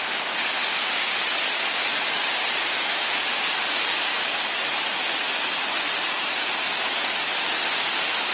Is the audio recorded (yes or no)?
yes